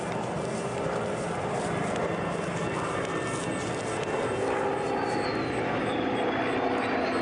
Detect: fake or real real